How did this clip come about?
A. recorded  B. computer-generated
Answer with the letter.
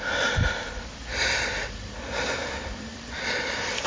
B